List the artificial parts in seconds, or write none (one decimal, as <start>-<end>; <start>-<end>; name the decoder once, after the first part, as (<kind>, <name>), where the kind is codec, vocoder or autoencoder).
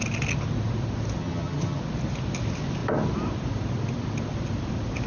1.2-1.8 (vocoder, HiFi-GAN)